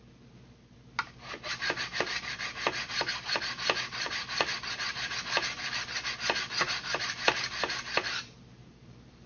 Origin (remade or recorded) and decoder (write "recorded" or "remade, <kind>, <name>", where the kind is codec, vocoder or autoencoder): recorded